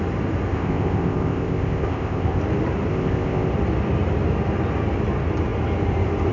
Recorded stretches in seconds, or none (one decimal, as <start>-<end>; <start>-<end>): 0.0-0.5; 2.4-2.9; 3.5-6.3